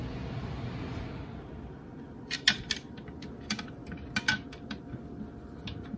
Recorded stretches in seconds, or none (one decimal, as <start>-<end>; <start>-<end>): 0.0-6.0